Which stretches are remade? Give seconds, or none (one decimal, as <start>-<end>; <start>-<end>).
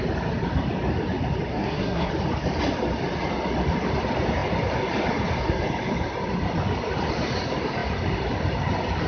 1.5-2.1